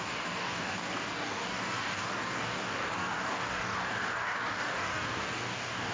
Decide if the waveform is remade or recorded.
remade